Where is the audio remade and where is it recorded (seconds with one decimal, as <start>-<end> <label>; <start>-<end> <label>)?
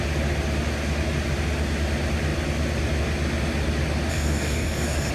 0.0-4.1 recorded; 4.1-5.1 remade